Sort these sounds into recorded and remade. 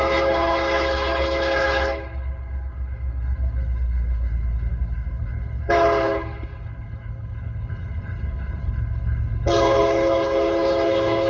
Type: remade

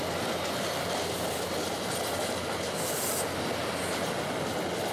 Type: recorded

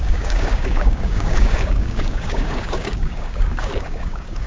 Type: remade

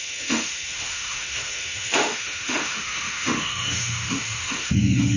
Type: remade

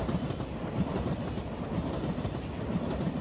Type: remade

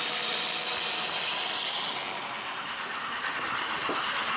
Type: recorded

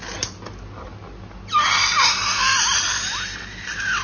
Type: recorded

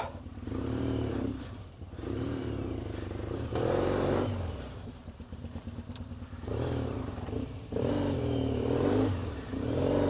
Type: remade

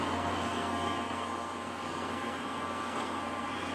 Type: remade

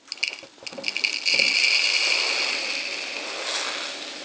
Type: recorded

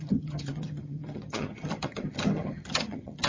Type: remade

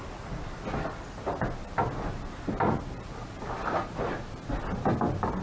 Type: recorded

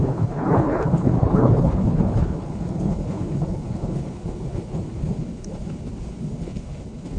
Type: remade